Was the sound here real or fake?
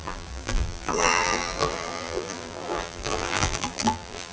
fake